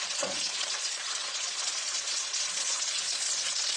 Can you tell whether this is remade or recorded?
remade